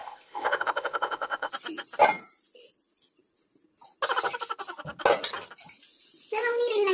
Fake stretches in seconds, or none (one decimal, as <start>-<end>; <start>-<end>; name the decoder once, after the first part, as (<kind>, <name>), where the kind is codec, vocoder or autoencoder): 0.0-1.5 (codec, ZipCodec)